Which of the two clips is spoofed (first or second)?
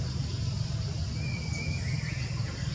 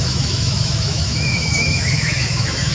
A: second